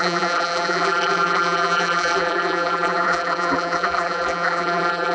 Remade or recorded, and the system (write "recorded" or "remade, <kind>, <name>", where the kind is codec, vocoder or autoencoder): remade, vocoder, BigVGAN v2